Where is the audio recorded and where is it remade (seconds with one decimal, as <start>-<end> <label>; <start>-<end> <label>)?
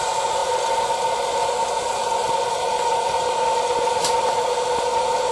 0.0-5.3 recorded